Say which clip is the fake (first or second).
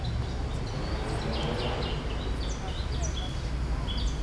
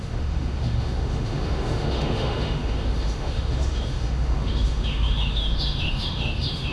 second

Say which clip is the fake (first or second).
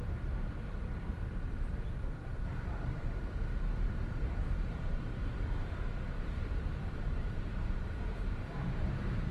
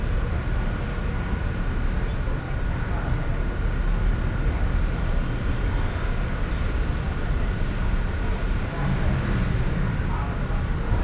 first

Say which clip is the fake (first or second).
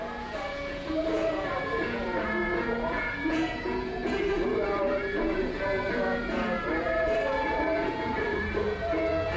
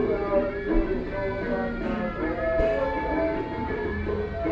first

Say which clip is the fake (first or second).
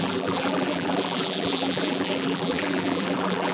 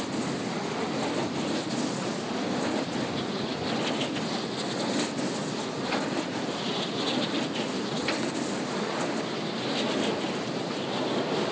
first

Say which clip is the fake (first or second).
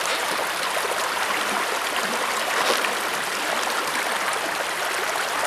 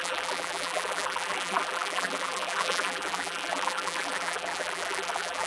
second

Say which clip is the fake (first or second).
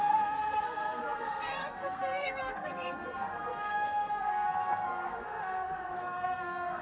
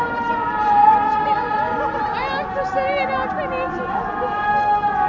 first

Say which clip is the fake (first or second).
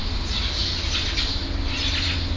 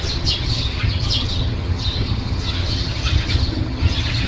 second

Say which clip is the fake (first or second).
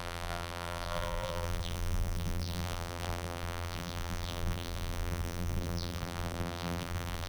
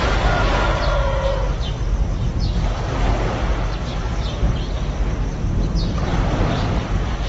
first